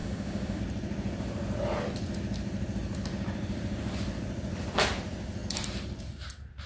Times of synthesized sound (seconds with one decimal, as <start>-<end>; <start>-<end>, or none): 0.0-0.6